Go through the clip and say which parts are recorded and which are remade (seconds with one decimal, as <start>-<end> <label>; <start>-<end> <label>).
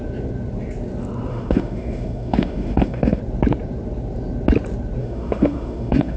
0.0-1.3 recorded; 1.3-3.2 remade; 3.2-5.0 recorded; 5.0-6.2 remade